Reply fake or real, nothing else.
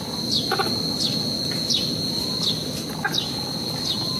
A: real